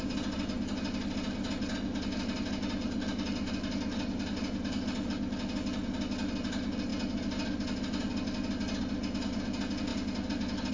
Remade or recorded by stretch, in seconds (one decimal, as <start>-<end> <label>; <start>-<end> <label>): 0.0-10.7 recorded